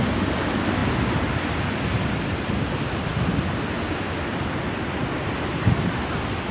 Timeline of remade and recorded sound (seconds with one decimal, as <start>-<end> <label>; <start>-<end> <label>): 0.0-6.5 recorded